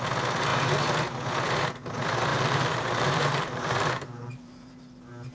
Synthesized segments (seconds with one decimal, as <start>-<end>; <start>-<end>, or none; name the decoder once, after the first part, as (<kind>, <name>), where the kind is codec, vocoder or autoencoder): 2.3-4.8 (vocoder, BigVGAN v2)